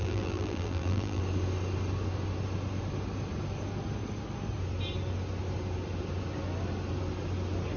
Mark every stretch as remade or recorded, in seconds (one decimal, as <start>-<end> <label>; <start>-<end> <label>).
0.0-1.2 remade; 1.2-7.8 recorded